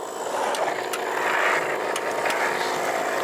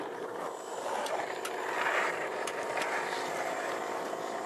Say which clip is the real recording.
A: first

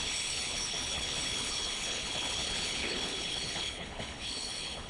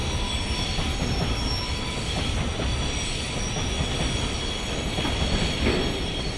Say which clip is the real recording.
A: second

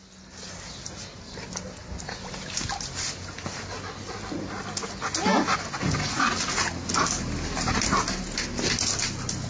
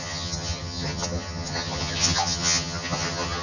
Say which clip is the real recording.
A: first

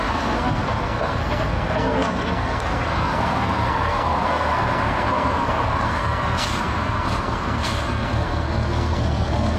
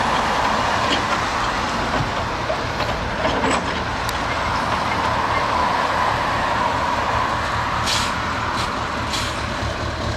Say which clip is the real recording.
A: second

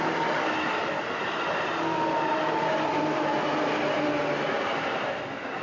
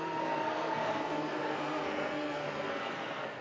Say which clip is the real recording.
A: first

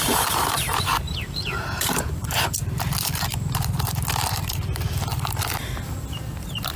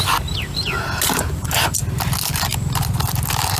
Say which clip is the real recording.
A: second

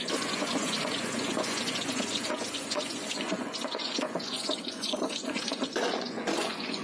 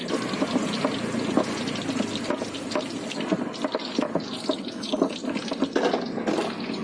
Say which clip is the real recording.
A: second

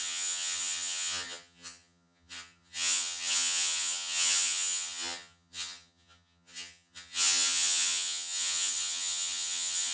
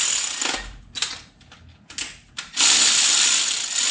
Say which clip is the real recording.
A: second